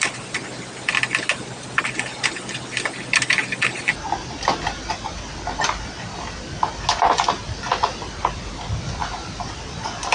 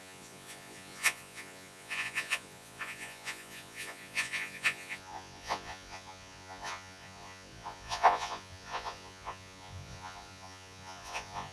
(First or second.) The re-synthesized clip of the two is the second